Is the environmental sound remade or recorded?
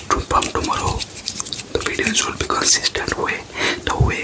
remade